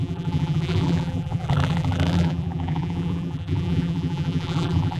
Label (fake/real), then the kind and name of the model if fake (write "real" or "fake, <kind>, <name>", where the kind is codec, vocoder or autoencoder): fake, vocoder, BigVGAN v2